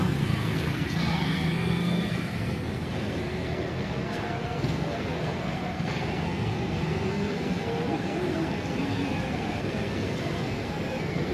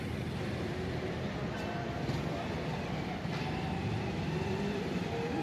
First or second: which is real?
second